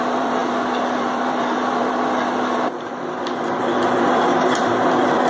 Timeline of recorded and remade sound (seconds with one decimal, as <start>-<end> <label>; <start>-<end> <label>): 0.0-5.3 remade